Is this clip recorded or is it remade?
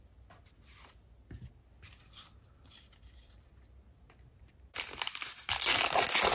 recorded